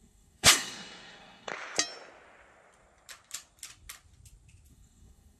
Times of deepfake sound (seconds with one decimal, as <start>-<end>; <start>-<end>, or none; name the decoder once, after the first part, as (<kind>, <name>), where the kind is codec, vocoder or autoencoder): 0.0-1.5 (codec, SNAC); 4.7-5.4